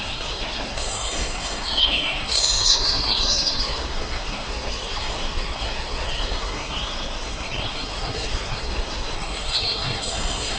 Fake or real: fake